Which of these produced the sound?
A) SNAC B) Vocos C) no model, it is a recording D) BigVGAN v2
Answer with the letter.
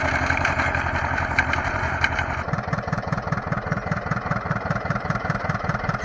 D